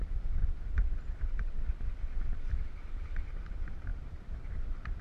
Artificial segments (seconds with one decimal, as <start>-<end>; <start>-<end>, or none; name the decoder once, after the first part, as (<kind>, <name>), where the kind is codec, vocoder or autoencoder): 0.0-0.4 (vocoder, BigVGAN v2); 3.4-5.0